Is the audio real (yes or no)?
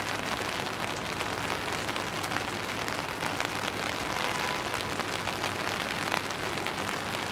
yes